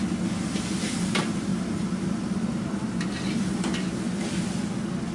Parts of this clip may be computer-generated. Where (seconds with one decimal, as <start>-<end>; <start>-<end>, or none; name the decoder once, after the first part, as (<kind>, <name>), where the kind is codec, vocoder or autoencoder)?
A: 1.5-4.6 (vocoder, BigVGAN v2)